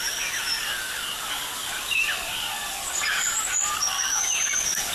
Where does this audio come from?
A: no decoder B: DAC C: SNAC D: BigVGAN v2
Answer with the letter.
B